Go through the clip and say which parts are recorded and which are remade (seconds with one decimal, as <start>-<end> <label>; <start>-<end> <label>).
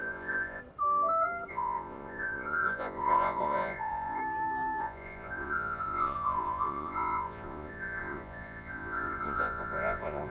0.0-0.6 remade; 0.6-1.5 recorded; 1.5-4.2 remade; 4.2-4.8 recorded; 4.8-10.3 remade